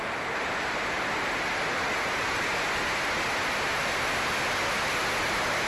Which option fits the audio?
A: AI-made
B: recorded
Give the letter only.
B